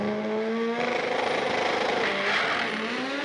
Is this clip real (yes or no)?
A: yes